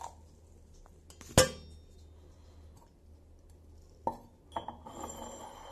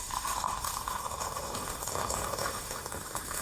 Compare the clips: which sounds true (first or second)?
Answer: first